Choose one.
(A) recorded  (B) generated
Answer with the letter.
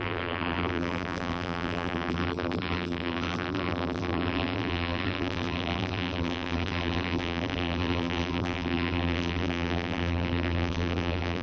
B